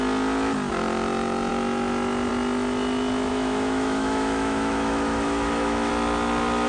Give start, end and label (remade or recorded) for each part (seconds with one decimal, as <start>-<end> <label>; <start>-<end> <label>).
0.0-3.3 recorded; 3.3-5.9 remade; 5.9-6.7 recorded